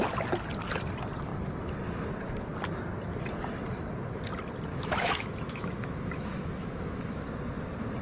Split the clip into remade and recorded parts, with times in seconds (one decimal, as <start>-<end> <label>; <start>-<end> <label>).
0.0-4.7 recorded; 4.7-7.2 remade; 7.2-8.0 recorded